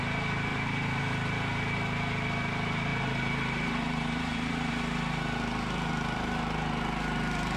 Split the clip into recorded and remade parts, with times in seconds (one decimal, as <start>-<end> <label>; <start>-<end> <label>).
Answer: 0.0-0.5 recorded; 0.5-1.1 remade; 1.1-2.9 recorded; 2.9-4.7 remade; 4.7-7.6 recorded